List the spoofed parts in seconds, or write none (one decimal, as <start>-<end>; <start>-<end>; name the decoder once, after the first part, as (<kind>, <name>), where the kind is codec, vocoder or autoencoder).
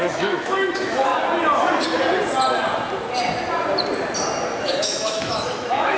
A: 0.0-1.1 (autoencoder, DAC-VAE); 4.6-6.0